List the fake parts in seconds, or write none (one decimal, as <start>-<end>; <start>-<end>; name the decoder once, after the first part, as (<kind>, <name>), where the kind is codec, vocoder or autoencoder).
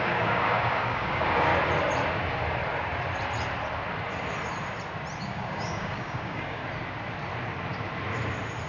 0.0-1.5 (codec, DAC); 5.2-6.6